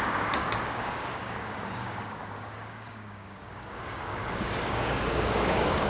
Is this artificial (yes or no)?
yes